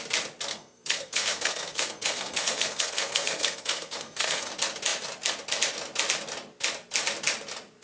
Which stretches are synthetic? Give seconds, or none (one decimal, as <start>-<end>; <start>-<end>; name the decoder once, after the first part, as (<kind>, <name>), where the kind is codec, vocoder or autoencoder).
0.5-4.5 (codec, SNAC)